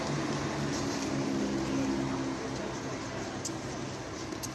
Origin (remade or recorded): recorded